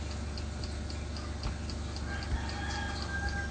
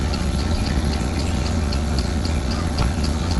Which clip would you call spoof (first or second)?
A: second